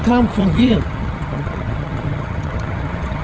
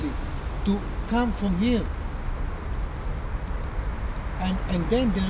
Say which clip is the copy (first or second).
first